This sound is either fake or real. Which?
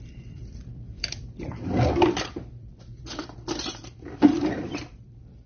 fake